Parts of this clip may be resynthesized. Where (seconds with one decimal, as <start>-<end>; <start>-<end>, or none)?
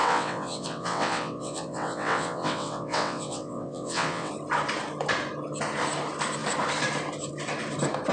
0.0-4.3